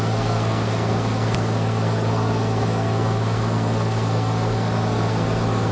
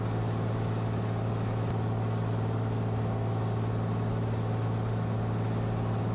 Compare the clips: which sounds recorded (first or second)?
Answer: second